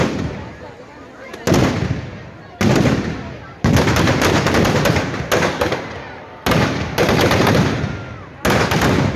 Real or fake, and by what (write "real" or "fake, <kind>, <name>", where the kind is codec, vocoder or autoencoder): real